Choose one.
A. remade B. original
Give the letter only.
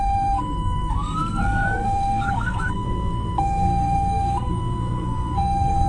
A